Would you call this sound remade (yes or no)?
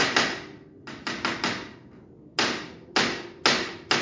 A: no